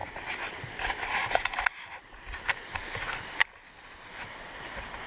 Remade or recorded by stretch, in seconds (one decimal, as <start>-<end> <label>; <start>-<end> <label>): 0.0-5.1 recorded